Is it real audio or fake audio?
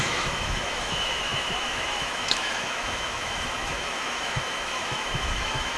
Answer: fake